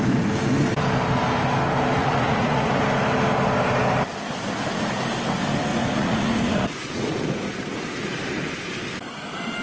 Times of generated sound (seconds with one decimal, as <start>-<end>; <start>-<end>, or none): 2.0-2.8; 5.7-7.5